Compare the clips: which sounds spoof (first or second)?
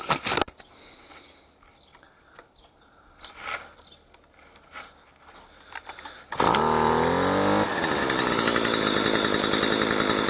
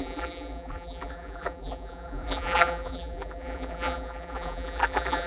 second